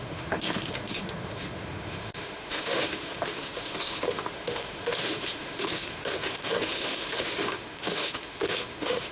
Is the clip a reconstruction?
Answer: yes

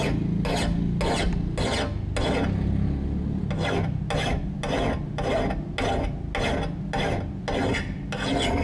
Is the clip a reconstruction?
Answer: no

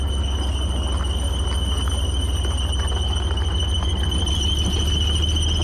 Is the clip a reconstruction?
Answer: no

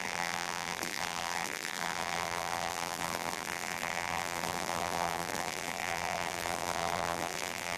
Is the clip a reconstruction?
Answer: yes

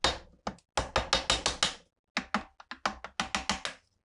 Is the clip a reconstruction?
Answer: no